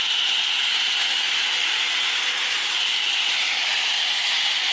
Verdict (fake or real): real